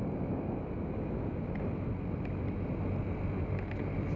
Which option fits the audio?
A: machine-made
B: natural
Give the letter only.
B